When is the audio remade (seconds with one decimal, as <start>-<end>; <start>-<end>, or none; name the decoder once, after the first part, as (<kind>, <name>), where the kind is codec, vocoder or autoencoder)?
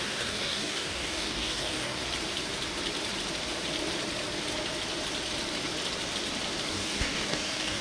0.0-2.0 (codec, DAC); 6.7-7.8